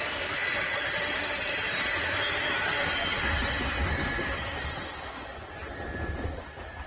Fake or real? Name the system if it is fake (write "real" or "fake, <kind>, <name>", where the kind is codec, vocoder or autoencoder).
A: real